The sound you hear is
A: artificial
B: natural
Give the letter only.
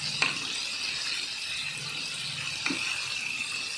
B